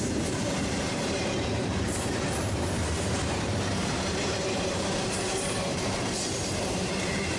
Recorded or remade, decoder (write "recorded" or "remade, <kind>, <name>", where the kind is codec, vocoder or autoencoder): remade, vocoder, BigVGAN v2